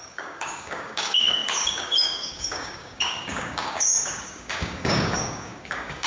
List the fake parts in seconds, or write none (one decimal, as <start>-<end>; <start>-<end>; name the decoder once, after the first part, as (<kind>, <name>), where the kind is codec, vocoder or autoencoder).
0.0-6.1 (codec, DAC)